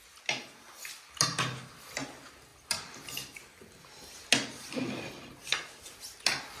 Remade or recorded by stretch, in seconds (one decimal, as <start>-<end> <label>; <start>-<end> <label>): 0.0-6.6 recorded